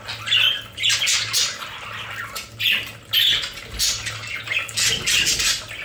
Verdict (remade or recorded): recorded